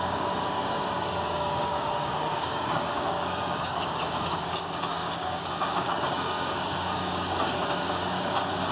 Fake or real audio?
fake